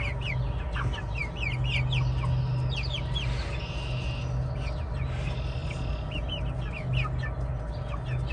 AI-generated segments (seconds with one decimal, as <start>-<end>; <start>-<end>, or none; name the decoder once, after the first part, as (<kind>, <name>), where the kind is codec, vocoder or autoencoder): none